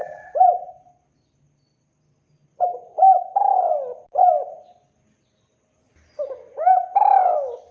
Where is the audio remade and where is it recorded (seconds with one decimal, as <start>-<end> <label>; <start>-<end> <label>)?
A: 0.0-0.7 remade; 0.7-7.7 recorded